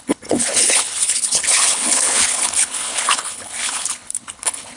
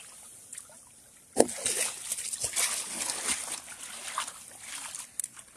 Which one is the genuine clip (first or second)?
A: second